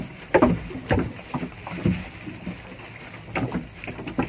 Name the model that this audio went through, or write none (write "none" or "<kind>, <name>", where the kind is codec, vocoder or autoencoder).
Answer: none